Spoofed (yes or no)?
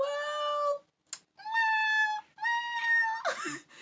no